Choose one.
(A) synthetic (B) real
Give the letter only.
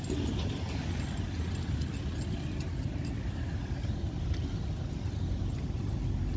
B